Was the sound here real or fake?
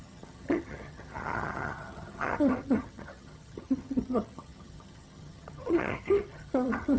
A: fake